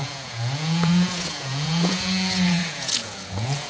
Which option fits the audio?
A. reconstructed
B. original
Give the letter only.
A